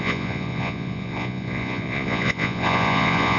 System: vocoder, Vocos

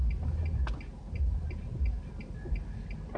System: none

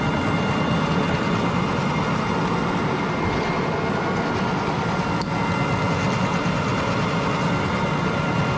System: none